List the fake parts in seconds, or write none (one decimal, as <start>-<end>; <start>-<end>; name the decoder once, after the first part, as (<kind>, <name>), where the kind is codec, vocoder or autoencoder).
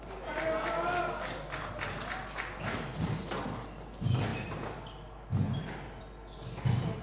none